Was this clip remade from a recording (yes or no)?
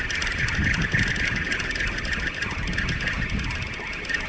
no